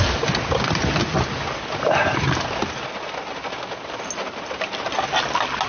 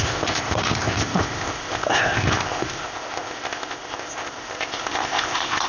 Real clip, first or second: first